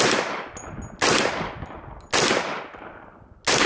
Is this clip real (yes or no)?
yes